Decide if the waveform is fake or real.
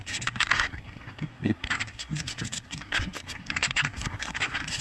fake